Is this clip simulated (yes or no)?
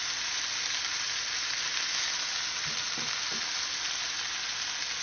no